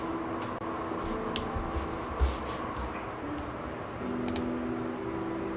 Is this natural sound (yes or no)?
yes